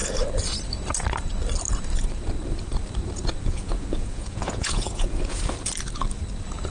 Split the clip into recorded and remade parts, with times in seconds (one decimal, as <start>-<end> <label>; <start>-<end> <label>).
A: 0.0-3.4 recorded; 3.4-5.4 remade; 5.4-6.7 recorded